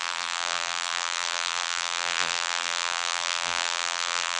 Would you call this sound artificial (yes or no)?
yes